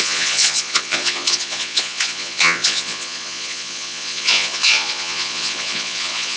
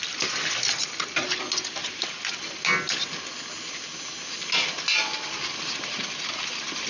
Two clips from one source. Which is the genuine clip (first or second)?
second